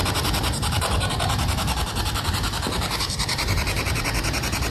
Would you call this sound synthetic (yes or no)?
yes